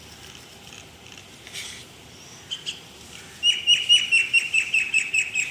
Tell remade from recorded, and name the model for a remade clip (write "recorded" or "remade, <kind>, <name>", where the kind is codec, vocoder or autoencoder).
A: recorded